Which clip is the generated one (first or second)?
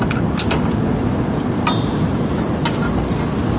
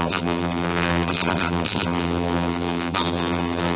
second